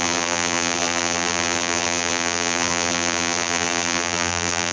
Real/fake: fake